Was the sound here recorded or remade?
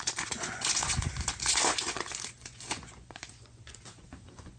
remade